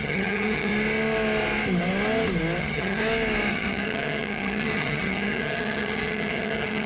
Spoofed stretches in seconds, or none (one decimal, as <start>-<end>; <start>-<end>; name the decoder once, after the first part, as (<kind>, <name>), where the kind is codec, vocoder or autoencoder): 0.0-0.7 (vocoder, HiFi-GAN); 2.6-3.0; 3.5-6.9